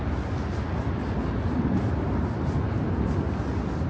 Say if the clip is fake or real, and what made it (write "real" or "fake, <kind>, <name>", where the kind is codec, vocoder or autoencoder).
real